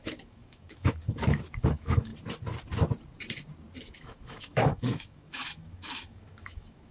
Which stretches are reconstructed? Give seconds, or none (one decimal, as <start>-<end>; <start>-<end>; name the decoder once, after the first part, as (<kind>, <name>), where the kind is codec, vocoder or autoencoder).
0.0-2.1 (autoencoder, DAC-VAE); 3.8-6.9